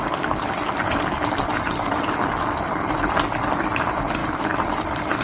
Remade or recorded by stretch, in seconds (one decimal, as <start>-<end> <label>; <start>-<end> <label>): 0.0-5.2 remade